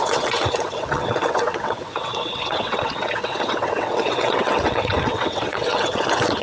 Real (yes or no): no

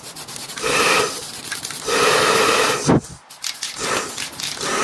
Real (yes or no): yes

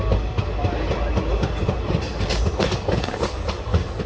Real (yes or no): yes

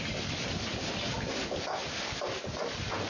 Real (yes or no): yes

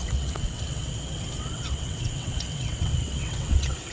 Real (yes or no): no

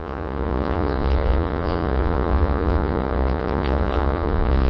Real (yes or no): no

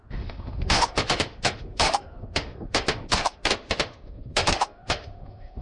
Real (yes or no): no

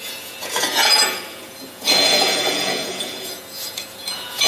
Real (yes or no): no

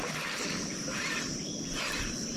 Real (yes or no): yes